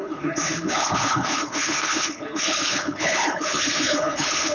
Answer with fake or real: fake